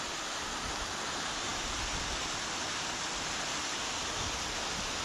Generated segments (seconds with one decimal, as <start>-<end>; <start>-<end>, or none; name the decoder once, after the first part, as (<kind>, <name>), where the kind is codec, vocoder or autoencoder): none